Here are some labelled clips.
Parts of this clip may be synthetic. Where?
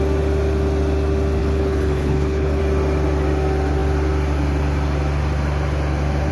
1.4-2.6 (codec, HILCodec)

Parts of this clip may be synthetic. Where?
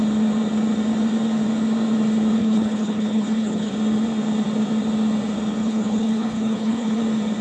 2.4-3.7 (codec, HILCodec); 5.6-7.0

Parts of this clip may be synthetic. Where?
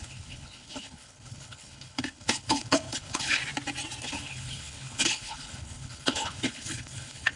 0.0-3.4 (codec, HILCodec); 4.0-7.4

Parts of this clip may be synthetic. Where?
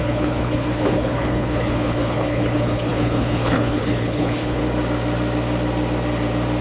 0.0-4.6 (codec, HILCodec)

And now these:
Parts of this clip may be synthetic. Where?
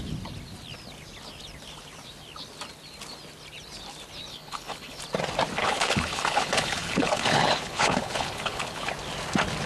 4.3-5.0 (codec, HILCodec); 5.6-8.9